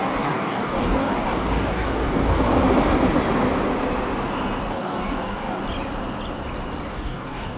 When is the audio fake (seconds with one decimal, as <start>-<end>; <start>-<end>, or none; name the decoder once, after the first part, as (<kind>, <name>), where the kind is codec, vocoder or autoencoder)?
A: 0.0-2.5 (codec, DAC); 4.7-5.6; 6.9-7.6